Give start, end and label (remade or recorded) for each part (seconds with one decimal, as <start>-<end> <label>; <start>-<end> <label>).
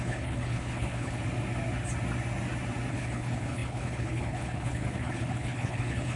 0.0-1.2 remade; 1.2-2.9 recorded; 2.9-6.2 remade